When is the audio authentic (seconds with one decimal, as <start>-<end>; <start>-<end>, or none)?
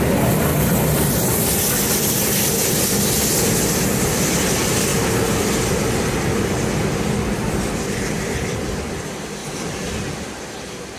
0.0-11.0